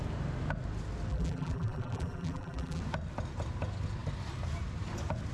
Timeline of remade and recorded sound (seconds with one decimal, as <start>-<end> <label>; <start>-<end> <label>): 0.0-1.1 recorded; 1.1-2.8 remade; 2.8-5.3 recorded